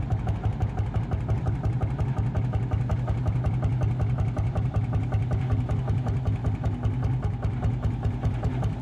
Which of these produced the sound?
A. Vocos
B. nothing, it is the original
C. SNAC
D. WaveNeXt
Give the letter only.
B